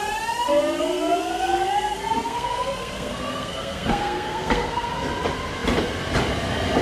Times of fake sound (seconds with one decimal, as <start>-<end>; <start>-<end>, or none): 0.8-4.9

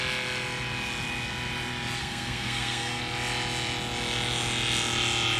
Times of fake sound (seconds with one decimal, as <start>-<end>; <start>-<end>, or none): 2.0-3.0

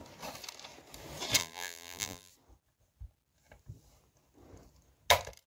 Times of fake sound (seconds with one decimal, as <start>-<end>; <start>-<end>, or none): 1.4-2.3

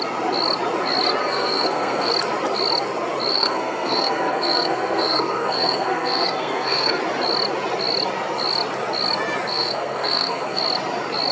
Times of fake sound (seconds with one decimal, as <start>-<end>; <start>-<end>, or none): 1.2-2.1; 3.3-7.0; 9.5-10.6

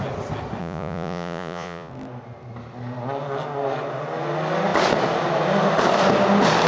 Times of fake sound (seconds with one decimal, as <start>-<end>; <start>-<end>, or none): 0.6-1.9